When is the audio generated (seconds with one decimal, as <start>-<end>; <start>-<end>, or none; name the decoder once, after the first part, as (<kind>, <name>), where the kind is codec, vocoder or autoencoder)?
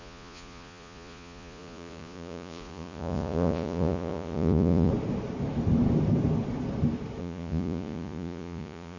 0.0-4.9 (vocoder, Vocos); 7.2-9.0